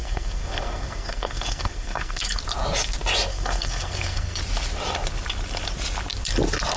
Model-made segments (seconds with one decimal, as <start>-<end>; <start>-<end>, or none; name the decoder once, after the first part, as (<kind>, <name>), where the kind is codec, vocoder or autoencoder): 0.0-2.4 (codec, SNAC); 3.3-4.4